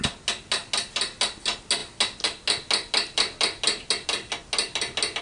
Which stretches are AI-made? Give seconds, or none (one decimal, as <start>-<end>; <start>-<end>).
none